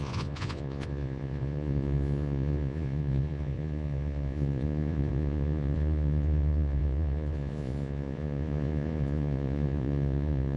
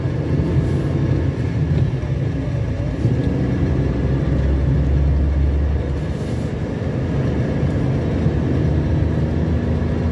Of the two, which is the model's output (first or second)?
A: first